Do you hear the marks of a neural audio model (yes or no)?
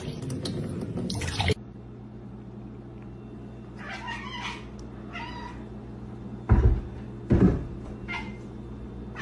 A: no